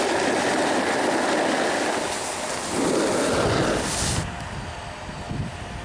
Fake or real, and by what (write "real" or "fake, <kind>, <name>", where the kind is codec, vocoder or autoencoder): real